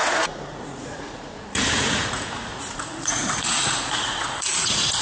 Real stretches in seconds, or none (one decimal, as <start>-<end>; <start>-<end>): none